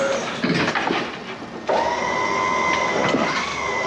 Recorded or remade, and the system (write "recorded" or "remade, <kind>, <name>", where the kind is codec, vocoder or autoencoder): recorded